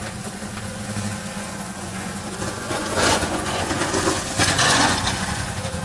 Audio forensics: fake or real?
fake